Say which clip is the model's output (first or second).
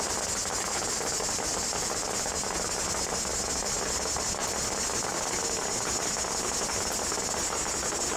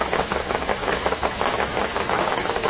second